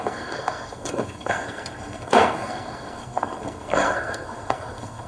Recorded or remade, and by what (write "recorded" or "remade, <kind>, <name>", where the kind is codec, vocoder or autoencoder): remade, codec, SNAC